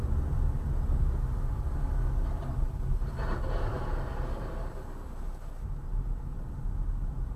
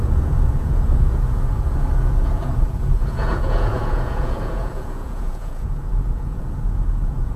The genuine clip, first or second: first